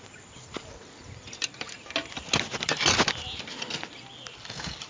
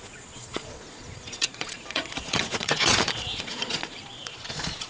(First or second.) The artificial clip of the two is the second